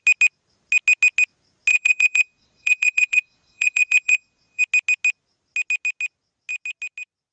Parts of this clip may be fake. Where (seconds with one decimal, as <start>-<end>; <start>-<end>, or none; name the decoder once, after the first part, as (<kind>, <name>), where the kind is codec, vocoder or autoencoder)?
1.7-4.6 (vocoder, Vocos)